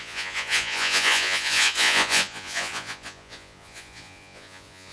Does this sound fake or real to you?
fake